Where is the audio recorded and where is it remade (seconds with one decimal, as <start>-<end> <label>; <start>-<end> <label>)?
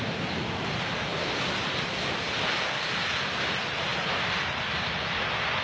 0.0-3.9 recorded; 3.9-4.6 remade; 4.6-5.6 recorded